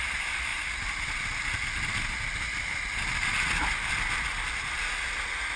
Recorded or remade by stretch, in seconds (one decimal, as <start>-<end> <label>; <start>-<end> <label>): 0.0-5.6 recorded